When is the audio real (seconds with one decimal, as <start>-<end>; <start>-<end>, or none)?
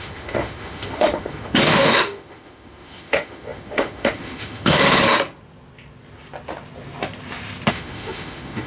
4.8-7.7